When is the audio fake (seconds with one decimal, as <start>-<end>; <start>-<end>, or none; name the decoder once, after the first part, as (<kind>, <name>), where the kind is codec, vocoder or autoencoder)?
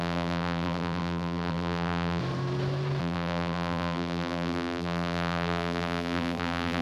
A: 0.0-2.2 (vocoder, BigVGAN v2); 3.0-6.8